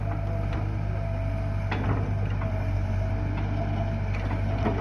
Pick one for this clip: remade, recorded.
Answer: recorded